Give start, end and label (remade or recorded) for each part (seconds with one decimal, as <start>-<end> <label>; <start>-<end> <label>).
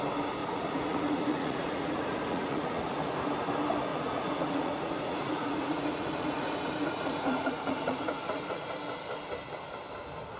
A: 0.0-0.4 recorded; 0.4-3.1 remade; 3.1-3.9 recorded; 3.9-8.7 remade; 8.7-10.4 recorded